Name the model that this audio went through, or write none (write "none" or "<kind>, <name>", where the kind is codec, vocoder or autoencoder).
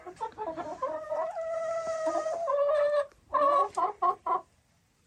vocoder, BigVGAN v2